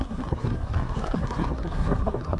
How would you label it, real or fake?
fake